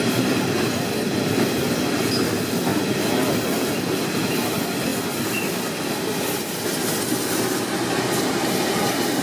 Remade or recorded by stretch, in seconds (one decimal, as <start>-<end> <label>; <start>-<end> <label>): 0.0-9.2 recorded